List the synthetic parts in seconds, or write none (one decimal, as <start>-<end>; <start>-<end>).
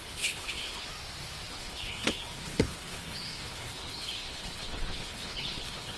0.0-0.9; 1.5-6.0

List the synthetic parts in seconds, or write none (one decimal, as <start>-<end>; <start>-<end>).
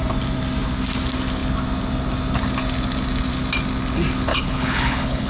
4.3-5.3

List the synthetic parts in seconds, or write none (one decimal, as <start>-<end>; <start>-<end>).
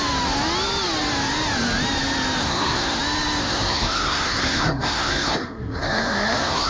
2.4-3.0; 3.4-6.7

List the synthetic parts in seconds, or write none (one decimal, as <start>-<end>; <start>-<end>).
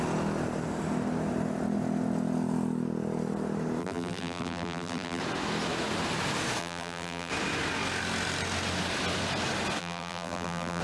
3.8-5.2; 6.6-7.3; 9.8-10.8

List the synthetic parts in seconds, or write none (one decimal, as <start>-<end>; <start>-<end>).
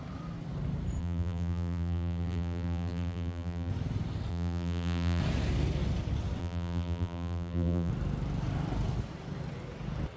1.0-3.7; 4.3-5.2; 6.4-7.9